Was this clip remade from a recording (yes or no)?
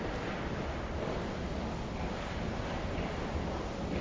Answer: no